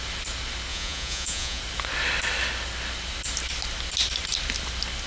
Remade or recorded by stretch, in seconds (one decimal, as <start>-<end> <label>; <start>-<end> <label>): 0.0-0.7 recorded; 0.7-1.6 remade; 1.6-5.1 recorded